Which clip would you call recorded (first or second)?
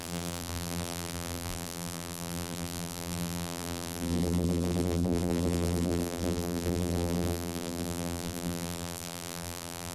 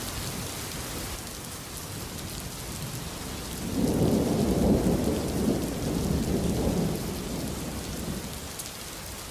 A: second